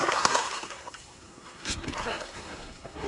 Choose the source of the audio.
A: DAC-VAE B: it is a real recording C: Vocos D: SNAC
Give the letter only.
D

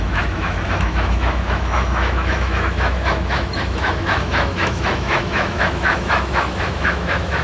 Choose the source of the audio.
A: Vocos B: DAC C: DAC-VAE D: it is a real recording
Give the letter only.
C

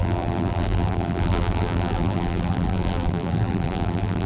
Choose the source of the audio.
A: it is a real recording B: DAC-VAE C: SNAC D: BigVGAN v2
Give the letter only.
D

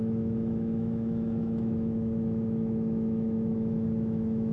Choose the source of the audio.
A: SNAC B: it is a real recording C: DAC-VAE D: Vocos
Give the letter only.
C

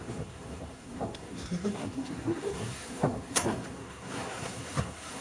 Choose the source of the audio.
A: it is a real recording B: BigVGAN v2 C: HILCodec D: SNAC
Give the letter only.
D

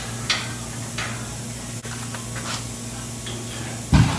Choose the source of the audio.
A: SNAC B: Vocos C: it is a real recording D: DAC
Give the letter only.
C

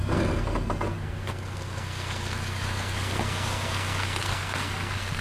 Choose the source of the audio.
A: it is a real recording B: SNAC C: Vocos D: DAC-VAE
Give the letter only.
B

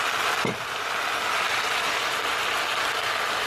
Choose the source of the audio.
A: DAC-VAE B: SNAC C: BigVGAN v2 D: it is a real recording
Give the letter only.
D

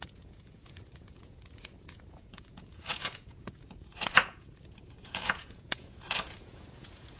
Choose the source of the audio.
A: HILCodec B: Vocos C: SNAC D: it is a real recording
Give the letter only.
B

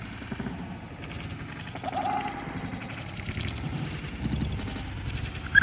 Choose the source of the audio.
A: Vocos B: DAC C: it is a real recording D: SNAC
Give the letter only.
C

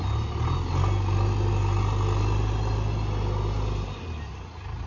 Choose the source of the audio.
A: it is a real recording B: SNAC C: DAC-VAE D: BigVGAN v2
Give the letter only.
A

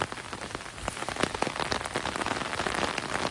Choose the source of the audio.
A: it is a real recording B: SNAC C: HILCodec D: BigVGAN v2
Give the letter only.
A